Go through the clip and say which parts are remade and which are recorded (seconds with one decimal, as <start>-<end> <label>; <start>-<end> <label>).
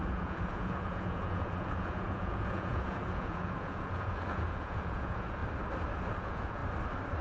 0.0-5.4 remade; 5.4-6.1 recorded; 6.1-6.6 remade; 6.6-7.2 recorded